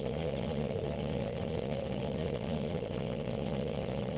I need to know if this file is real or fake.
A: fake